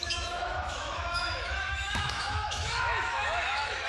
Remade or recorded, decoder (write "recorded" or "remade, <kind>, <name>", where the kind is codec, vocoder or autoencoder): remade, autoencoder, DAC-VAE